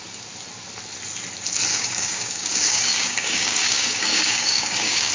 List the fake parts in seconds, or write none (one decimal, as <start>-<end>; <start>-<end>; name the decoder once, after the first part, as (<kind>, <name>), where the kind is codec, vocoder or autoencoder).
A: 1.7-5.1 (codec, DAC)